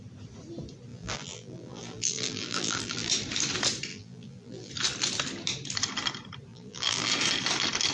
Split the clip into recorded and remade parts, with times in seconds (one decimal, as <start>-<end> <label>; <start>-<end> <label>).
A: 0.0-0.9 recorded; 0.9-3.1 remade; 3.1-3.9 recorded; 3.9-4.7 remade; 4.7-6.5 recorded; 6.5-7.1 remade; 7.1-7.9 recorded